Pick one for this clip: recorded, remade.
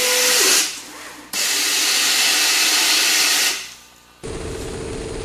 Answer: recorded